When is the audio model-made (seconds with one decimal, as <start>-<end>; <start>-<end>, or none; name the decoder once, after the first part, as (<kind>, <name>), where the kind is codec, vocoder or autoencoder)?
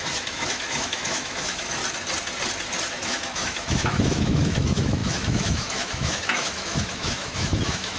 0.0-1.8 (autoencoder, DAC-VAE); 2.9-8.0